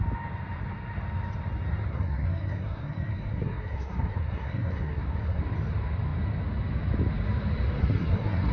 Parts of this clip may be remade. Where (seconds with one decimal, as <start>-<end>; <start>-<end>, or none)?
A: 1.9-5.4; 7.8-8.5